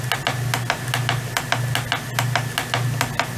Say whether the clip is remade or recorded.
recorded